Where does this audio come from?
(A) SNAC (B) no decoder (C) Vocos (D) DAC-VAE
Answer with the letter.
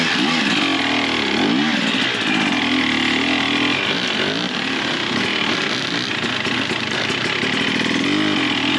B